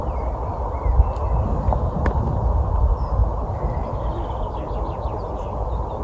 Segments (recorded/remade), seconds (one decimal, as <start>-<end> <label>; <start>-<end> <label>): 0.0-6.0 recorded

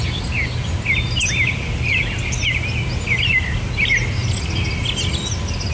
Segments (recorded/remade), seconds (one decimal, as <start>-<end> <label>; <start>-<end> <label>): 0.0-5.7 recorded

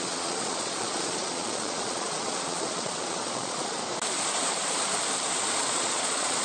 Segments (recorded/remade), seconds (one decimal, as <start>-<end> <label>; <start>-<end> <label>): 0.0-3.8 remade; 3.8-5.6 recorded; 5.6-6.4 remade

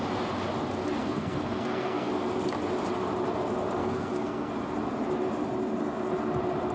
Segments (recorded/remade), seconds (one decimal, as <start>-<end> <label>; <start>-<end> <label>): 0.0-1.0 recorded; 1.0-2.1 remade; 2.1-3.8 recorded; 3.8-4.5 remade; 4.5-6.7 recorded